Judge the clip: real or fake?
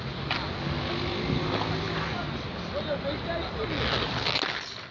real